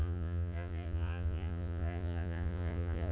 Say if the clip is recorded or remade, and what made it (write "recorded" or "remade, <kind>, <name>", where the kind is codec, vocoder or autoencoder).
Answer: remade, vocoder, Vocos